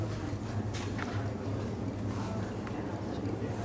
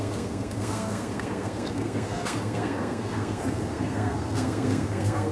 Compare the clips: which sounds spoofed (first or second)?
second